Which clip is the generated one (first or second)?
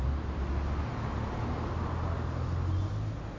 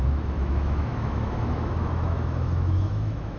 second